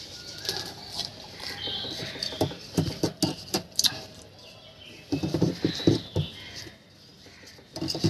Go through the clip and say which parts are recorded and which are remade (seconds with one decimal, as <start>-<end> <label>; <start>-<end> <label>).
0.0-7.1 recorded; 7.1-8.1 remade